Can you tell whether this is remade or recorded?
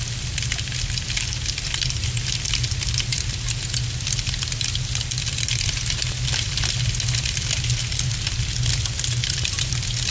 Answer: recorded